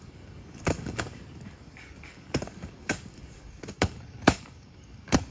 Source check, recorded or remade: remade